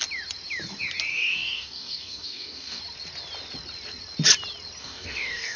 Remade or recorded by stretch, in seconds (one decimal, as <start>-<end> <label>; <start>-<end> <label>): 0.0-1.1 recorded; 1.1-2.8 remade; 2.8-4.8 recorded; 4.8-5.6 remade